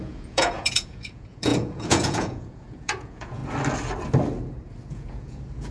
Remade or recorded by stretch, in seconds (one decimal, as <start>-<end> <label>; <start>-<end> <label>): 0.0-3.4 remade; 3.4-4.9 recorded; 4.9-5.7 remade